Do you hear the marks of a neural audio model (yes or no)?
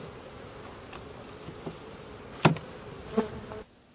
no